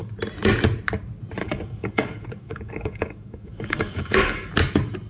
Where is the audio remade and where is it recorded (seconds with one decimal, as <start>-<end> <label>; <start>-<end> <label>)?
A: 0.0-1.4 recorded; 1.4-4.5 remade; 4.5-5.1 recorded